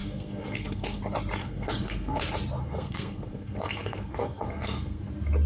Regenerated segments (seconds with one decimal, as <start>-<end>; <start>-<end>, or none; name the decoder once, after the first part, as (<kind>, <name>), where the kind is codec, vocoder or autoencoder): 0.0-1.0 (codec, SNAC); 1.4-2.2; 2.6-5.0